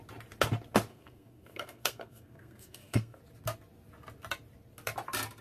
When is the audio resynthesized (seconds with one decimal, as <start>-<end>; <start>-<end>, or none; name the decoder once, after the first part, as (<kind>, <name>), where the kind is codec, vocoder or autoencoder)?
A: 0.9-3.2 (codec, SNAC)